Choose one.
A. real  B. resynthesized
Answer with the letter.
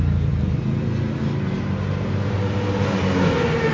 A